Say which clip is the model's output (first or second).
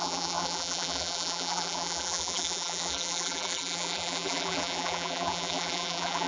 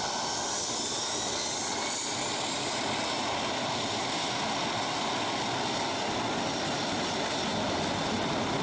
first